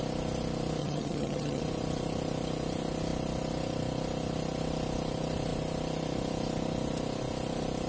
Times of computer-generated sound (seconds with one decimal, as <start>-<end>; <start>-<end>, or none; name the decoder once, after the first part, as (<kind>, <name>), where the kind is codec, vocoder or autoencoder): 0.8-1.6 (vocoder, HiFi-GAN)

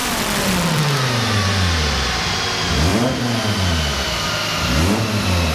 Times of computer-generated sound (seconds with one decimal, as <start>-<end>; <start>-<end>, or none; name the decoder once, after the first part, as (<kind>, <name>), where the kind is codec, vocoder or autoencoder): 0.0-2.3 (vocoder, BigVGAN v2); 2.9-3.7

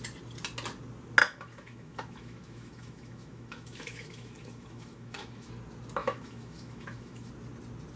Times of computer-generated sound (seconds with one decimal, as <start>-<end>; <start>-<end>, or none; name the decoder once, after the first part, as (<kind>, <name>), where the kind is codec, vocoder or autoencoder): 1.2-5.5 (autoencoder, DAC-VAE); 6.0-7.3

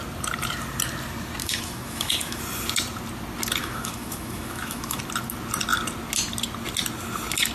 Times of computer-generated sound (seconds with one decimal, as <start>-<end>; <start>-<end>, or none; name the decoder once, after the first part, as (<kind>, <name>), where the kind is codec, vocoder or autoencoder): 1.4-2.4 (autoencoder, DAC-VAE); 3.6-5.0

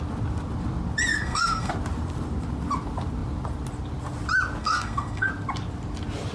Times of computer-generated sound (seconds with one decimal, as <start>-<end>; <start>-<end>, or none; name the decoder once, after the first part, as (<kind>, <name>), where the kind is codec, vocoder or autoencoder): 1.1-1.7 (codec, SNAC); 4.6-5.3

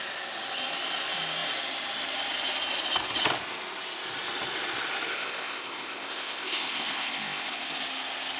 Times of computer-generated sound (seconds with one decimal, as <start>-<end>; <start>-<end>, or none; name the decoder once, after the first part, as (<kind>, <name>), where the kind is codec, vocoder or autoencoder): 5.1-7.7 (codec, ZipCodec)

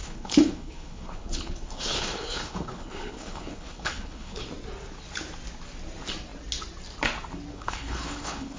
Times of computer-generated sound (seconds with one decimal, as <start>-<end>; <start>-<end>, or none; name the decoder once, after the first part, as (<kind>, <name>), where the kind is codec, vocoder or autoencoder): 0.0-4.4 (codec, HILCodec); 7.5-8.6

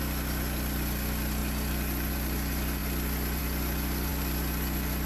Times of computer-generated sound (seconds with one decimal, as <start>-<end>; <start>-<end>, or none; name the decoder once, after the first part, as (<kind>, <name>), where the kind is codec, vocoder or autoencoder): none